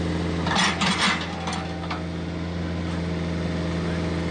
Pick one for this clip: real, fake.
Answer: real